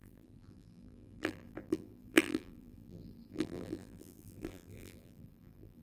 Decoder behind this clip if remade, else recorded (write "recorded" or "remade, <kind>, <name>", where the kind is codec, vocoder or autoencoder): remade, vocoder, BigVGAN v2